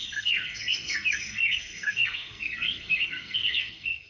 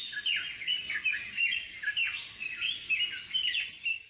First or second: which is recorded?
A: second